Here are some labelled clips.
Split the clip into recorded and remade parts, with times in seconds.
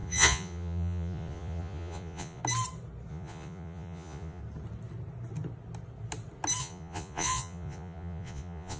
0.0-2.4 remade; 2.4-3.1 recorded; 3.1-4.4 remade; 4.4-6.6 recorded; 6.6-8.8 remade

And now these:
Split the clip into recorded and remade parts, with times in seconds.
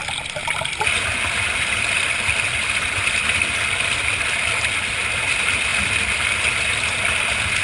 0.0-7.6 recorded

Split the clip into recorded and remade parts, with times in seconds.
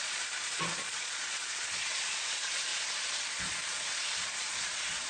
0.0-2.7 remade; 2.7-3.2 recorded; 3.2-5.1 remade